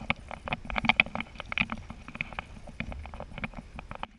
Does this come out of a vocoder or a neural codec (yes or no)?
no